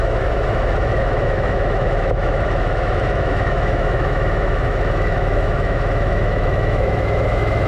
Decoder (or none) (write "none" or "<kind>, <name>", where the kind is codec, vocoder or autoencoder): autoencoder, DAC-VAE